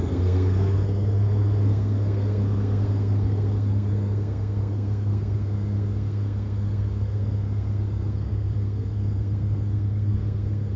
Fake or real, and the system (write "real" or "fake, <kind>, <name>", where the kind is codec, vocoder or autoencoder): fake, codec, SNAC